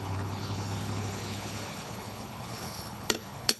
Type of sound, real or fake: fake